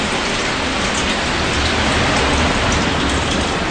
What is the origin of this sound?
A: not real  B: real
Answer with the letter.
B